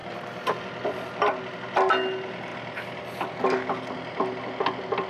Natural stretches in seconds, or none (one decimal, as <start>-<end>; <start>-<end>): 0.0-5.1